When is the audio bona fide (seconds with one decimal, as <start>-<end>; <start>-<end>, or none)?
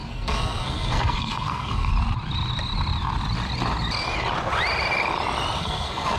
1.9-5.6